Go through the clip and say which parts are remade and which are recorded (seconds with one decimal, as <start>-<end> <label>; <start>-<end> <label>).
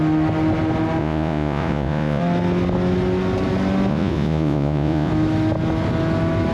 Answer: 0.0-1.0 recorded; 1.0-2.2 remade; 2.2-3.9 recorded; 3.9-5.1 remade; 5.1-6.5 recorded